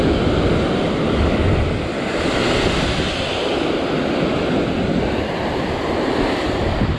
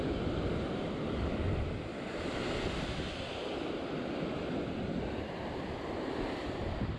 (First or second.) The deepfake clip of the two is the second